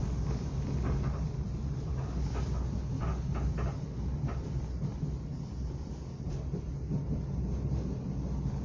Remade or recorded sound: recorded